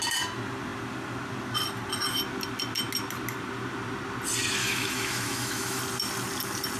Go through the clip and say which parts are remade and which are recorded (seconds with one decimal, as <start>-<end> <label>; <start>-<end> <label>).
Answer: 0.0-4.6 recorded; 4.6-5.8 remade; 5.8-6.8 recorded